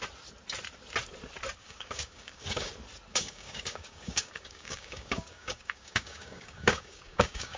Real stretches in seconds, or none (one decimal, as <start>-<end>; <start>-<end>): 0.0-1.6; 2.7-3.1